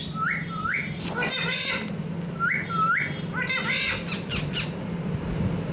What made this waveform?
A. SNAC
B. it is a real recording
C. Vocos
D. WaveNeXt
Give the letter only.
B